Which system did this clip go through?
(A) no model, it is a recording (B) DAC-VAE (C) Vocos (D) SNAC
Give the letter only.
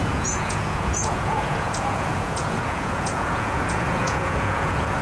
C